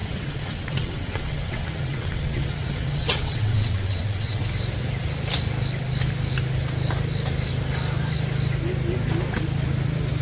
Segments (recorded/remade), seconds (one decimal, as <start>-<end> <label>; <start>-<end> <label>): 0.0-4.4 remade; 4.4-10.2 recorded